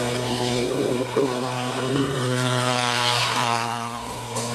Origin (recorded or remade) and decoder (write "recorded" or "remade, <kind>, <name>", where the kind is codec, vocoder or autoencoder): remade, codec, SNAC